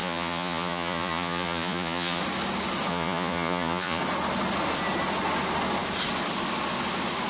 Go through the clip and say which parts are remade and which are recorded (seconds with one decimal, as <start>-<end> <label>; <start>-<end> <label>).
0.0-2.2 remade; 2.2-2.9 recorded; 2.9-4.0 remade; 4.0-7.3 recorded